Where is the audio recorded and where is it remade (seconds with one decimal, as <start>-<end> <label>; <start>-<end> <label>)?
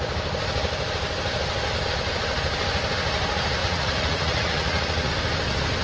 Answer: 0.0-3.6 recorded; 3.6-5.1 remade; 5.1-5.8 recorded